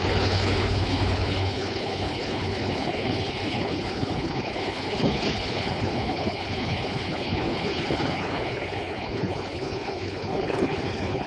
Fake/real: fake